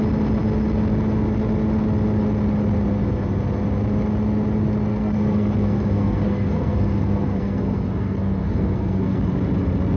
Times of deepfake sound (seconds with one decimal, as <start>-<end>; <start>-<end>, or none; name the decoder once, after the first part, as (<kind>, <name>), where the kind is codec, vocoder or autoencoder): 4.9-9.2 (codec, SNAC)